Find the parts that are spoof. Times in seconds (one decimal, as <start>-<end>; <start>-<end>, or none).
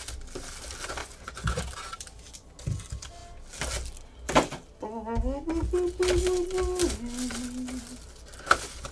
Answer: 1.0-1.6